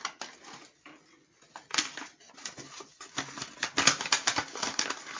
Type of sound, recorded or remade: recorded